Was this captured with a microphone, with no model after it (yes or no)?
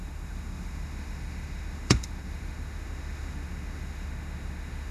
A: no